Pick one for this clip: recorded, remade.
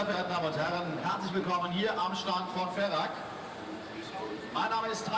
remade